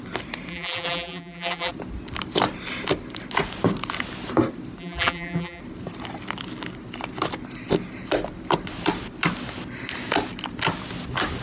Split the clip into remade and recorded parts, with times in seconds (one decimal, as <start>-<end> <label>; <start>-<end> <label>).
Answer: 0.0-0.5 recorded; 0.5-1.7 remade; 1.7-4.8 recorded; 4.8-5.6 remade; 5.6-11.4 recorded